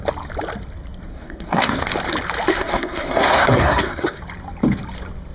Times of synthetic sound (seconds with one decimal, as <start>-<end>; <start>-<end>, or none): 1.1-1.8; 2.5-4.2